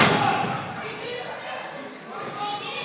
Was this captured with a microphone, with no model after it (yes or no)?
yes